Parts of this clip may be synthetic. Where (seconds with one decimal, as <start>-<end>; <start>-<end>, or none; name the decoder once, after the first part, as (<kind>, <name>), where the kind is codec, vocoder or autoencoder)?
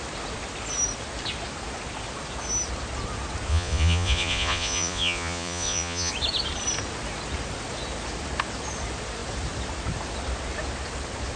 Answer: 3.5-6.1 (vocoder, Vocos)